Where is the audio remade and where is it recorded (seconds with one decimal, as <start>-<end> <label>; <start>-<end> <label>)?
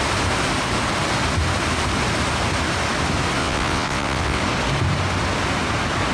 0.0-3.4 recorded; 3.4-4.4 remade; 4.4-6.1 recorded